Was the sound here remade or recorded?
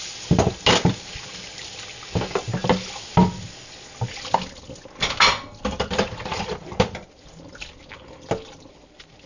recorded